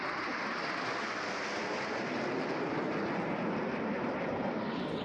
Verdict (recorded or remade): recorded